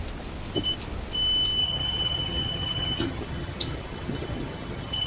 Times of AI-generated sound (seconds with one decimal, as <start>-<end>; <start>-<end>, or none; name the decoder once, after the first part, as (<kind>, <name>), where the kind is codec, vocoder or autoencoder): 1.6-5.1 (vocoder, HiFi-GAN)